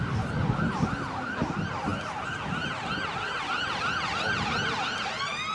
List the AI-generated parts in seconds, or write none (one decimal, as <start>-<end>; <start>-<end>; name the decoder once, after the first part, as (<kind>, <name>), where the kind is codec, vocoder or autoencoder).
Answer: none

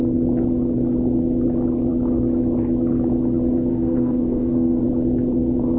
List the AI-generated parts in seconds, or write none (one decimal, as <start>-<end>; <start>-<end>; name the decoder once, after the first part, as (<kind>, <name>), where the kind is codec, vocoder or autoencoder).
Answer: 3.7-4.8 (codec, SNAC)

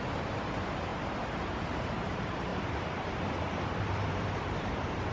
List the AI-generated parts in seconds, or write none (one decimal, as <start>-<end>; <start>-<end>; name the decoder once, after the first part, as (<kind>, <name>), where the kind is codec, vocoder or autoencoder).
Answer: 0.0-2.5 (vocoder, BigVGAN v2); 3.8-5.1

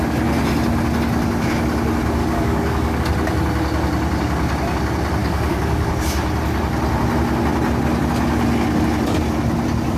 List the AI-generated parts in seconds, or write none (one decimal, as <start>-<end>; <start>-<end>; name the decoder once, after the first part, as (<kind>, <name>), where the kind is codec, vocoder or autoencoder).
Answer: 2.2-3.0 (codec, DAC); 5.2-6.0

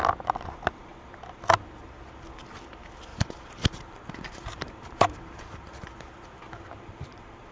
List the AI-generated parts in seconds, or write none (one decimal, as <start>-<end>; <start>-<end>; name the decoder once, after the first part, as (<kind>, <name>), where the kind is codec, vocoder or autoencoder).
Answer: 3.1-7.5 (vocoder, BigVGAN v2)

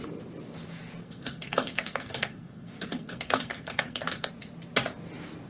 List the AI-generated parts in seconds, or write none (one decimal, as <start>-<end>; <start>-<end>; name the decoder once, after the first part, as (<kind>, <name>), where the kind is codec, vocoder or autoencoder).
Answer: 1.0-4.3 (codec, SNAC)

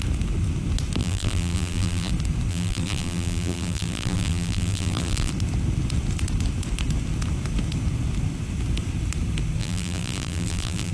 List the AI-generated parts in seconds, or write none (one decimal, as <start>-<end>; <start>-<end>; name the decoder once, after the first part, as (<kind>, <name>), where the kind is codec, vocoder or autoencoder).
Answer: 1.0-2.1 (vocoder, BigVGAN v2); 2.5-5.3; 9.6-10.9

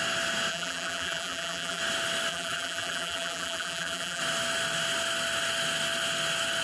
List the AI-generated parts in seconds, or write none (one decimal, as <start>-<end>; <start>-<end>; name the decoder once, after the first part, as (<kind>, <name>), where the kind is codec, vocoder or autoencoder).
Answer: 0.5-1.8 (vocoder, BigVGAN v2); 2.3-4.2